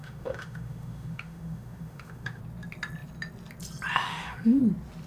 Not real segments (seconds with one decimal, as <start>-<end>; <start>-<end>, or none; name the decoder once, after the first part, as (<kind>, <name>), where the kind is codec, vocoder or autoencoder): 0.0-2.4 (autoencoder, DAC-VAE); 4.0-4.6